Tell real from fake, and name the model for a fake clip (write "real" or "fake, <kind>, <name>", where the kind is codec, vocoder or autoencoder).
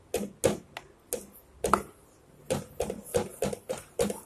real